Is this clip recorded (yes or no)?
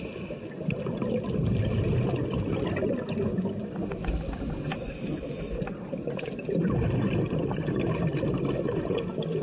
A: yes